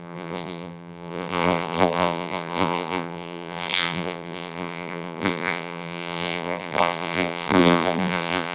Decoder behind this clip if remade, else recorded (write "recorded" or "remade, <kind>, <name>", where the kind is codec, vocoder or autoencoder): remade, vocoder, BigVGAN v2